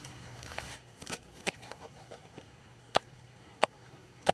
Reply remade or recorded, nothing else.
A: remade